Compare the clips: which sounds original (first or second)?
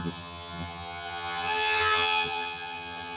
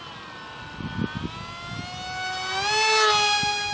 second